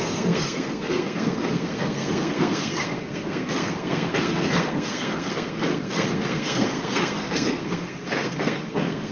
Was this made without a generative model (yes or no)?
no